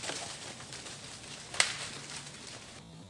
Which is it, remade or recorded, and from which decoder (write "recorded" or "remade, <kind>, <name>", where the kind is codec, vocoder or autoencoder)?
recorded